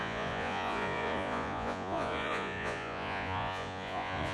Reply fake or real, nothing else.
fake